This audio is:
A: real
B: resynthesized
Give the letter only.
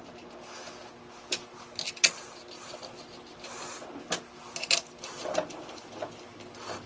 A